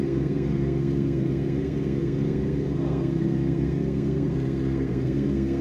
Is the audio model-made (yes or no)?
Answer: yes